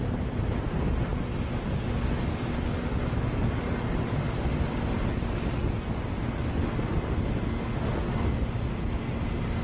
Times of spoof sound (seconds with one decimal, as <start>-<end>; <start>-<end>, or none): none